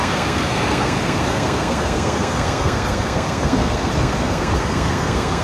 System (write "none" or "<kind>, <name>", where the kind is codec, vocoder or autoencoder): codec, SNAC